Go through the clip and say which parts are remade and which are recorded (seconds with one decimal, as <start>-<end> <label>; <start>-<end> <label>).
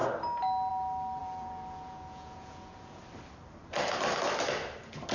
0.0-1.2 recorded; 1.2-3.0 remade; 3.0-5.1 recorded